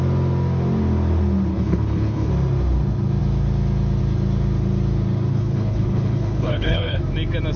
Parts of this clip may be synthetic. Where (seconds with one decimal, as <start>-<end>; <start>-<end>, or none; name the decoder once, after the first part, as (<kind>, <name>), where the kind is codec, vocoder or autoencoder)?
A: 1.5-2.3 (codec, HILCodec); 5.3-7.0